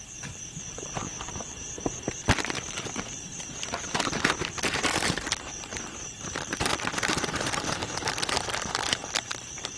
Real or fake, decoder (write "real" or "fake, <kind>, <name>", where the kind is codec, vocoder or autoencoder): fake, vocoder, BigVGAN v2